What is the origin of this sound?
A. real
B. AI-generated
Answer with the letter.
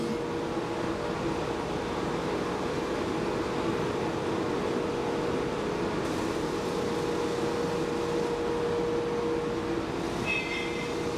A